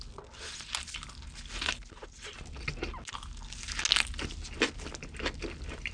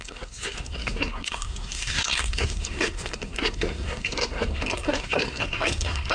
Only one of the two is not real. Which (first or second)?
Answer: second